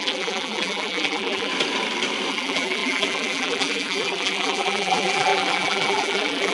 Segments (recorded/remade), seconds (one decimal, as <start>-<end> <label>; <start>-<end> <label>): 0.0-1.5 remade; 1.5-2.3 recorded; 2.3-6.5 remade